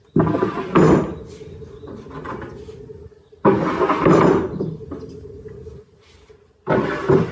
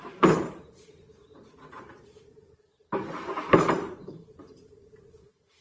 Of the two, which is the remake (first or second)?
second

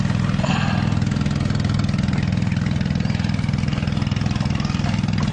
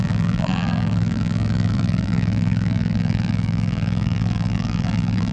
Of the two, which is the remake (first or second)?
second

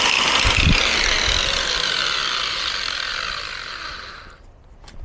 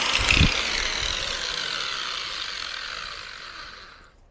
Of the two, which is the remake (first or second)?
first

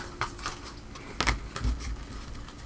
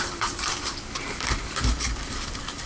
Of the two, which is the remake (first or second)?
second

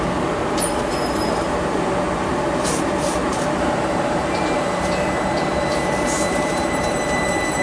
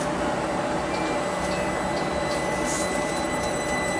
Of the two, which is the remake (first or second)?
first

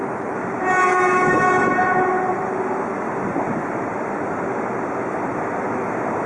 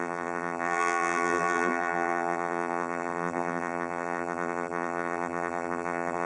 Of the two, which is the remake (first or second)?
second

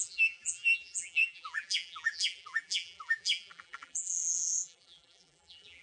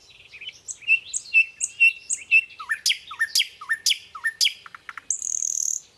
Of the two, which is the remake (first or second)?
first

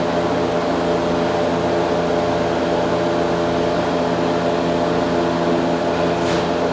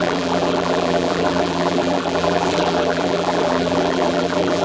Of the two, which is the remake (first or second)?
second